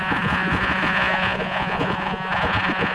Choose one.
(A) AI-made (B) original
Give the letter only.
A